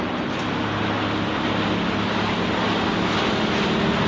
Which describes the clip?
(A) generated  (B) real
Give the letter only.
B